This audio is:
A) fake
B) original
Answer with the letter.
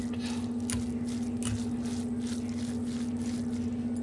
B